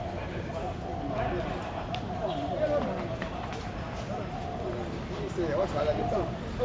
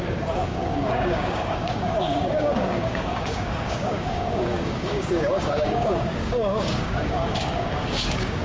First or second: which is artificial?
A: second